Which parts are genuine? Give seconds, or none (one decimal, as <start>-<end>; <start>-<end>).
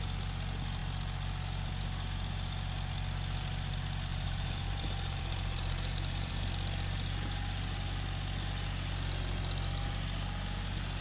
0.0-4.1; 6.5-11.0